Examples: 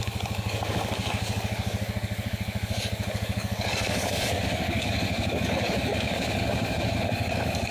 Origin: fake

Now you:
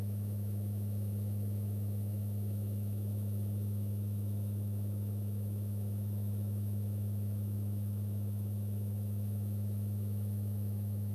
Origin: fake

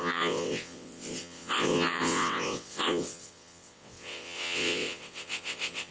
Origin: fake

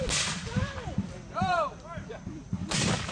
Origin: fake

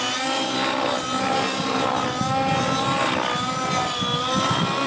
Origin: real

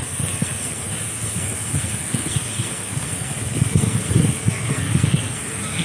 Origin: fake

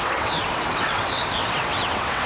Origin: fake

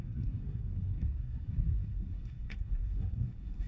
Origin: fake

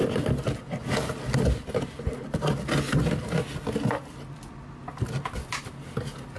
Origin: real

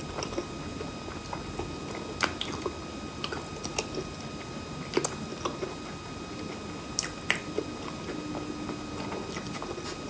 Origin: real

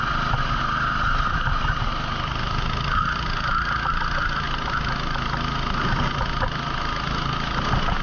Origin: real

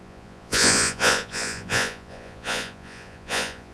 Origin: fake